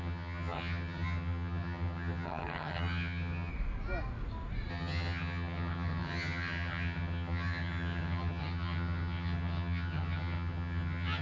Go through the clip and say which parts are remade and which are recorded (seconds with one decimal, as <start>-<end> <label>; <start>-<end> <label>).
0.0-3.5 remade; 3.5-4.7 recorded; 4.7-11.2 remade

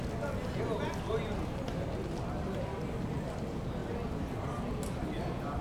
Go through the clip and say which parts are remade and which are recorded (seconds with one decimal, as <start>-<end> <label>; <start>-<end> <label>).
0.0-5.6 recorded